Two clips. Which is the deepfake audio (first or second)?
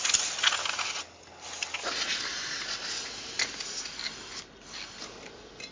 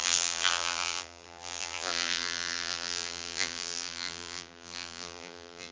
second